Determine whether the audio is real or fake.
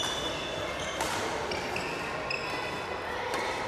real